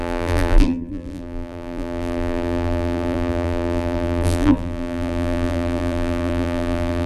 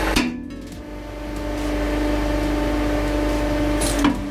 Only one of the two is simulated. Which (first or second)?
first